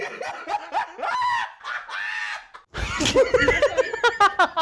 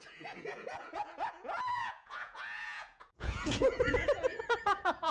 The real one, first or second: first